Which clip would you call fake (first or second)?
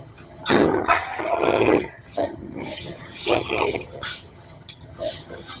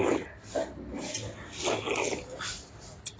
first